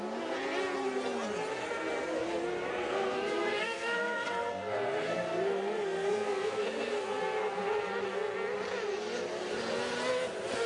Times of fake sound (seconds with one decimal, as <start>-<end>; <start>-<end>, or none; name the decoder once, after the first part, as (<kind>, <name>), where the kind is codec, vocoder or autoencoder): 2.7-7.6 (codec, SNAC)